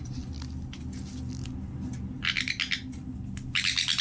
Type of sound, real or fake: real